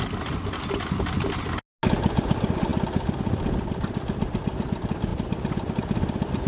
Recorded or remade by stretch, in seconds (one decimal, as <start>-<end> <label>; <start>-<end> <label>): 0.0-6.5 recorded